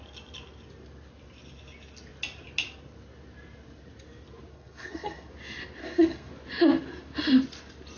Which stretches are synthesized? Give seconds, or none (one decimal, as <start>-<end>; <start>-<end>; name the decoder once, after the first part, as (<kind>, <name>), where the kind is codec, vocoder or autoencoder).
4.5-5.3 (codec, SNAC); 5.8-6.3